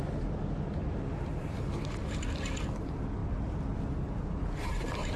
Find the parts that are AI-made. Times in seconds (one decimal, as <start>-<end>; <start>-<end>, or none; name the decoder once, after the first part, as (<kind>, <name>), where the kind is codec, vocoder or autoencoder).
none